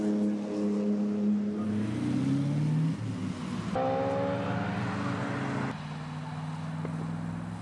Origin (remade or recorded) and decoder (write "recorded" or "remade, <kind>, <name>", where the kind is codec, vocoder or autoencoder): recorded